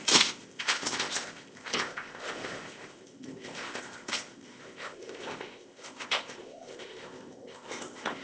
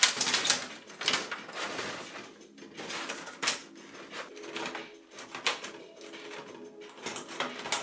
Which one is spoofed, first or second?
first